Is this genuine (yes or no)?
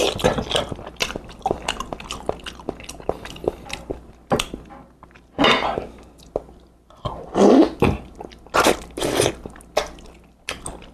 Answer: yes